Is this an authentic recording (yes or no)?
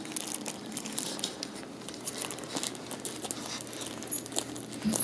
yes